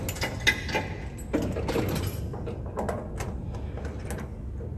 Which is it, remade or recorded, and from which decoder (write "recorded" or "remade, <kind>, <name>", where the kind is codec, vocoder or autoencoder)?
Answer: recorded